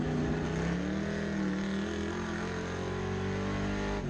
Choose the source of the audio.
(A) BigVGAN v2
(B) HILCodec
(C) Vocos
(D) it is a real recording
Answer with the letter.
D